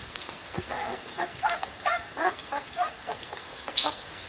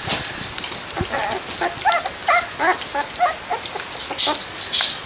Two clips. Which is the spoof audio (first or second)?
first